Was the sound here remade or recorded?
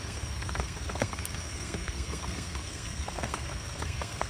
remade